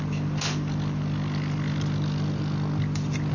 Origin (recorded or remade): recorded